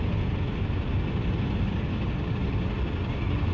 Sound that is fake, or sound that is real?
real